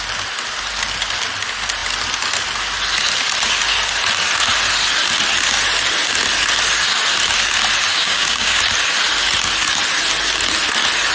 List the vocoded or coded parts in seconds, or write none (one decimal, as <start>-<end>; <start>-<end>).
7.9-8.6